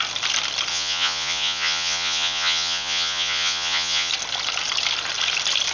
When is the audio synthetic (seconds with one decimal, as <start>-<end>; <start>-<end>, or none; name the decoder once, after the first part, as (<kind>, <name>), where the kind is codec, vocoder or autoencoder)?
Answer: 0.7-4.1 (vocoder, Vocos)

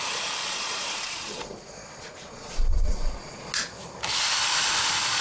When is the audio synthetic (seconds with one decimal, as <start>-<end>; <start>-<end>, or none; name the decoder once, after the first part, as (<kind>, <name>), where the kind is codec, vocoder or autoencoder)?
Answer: 0.4-3.5 (vocoder, Vocos)

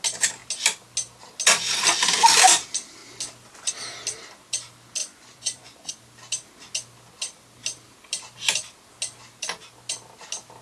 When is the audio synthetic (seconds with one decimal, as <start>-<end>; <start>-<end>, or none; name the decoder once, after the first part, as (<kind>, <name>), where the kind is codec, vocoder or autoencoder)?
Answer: 5.0-5.9 (vocoder, Vocos)

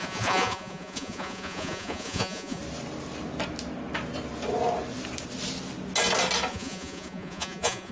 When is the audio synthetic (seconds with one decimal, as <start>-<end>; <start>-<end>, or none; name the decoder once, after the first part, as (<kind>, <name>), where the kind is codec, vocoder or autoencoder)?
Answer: 0.0-2.6 (vocoder, Vocos); 6.5-7.9